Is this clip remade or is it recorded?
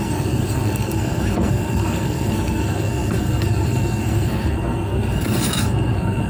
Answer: remade